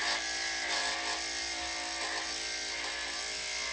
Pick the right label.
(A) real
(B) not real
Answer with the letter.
A